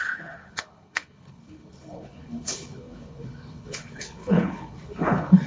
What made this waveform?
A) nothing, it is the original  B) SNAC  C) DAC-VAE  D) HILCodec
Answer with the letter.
D